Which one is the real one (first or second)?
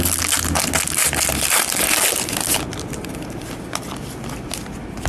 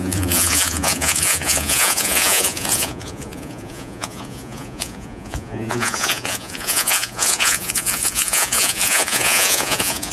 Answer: first